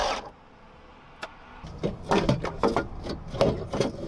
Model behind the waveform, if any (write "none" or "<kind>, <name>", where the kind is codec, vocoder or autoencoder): none